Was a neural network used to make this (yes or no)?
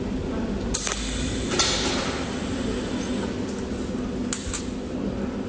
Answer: no